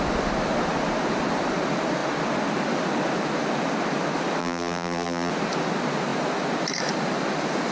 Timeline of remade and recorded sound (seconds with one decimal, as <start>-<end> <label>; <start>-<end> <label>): 0.0-4.4 recorded; 4.4-5.3 remade; 5.3-7.7 recorded